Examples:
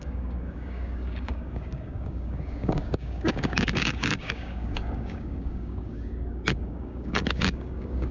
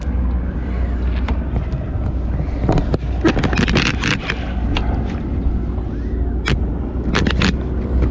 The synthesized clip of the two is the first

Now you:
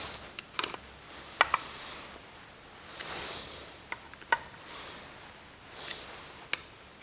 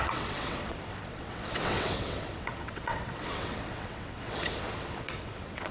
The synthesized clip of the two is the second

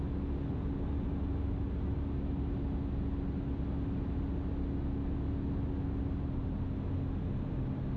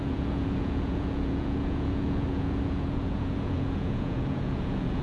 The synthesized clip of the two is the second